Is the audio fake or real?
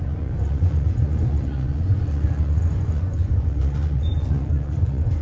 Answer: fake